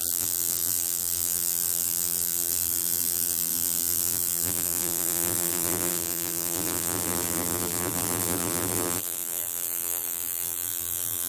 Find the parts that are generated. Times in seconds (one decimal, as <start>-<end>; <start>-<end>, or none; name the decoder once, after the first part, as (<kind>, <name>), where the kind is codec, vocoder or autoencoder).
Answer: 0.0-11.3 (vocoder, BigVGAN v2)